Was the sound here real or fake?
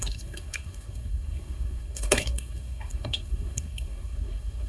fake